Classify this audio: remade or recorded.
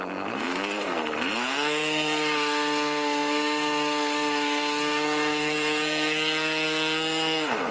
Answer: remade